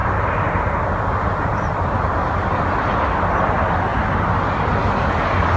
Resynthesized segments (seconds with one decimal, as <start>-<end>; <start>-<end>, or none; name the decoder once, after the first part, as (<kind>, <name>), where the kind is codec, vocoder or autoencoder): 0.0-2.6 (vocoder, BigVGAN v2)

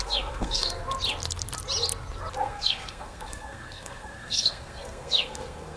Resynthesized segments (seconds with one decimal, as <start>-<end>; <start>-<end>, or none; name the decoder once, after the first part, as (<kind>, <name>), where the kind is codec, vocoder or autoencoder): 0.0-0.8 (codec, SNAC); 2.4-5.8

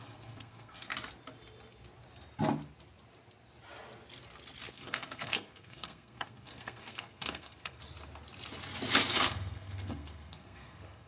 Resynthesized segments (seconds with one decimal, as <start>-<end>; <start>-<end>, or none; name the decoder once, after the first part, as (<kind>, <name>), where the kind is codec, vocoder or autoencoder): 0.0-0.9 (codec, SNAC); 4.7-7.8; 9.1-11.1

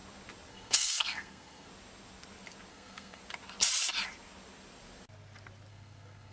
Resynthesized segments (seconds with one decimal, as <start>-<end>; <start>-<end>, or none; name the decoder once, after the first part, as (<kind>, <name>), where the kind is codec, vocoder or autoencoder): 0.5-1.7 (codec, SNAC); 2.7-3.2; 5.7-6.3

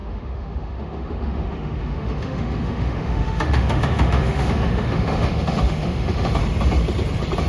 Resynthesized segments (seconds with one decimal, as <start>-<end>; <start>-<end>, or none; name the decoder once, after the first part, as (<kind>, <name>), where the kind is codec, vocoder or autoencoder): 0.0-6.4 (autoencoder, DAC-VAE)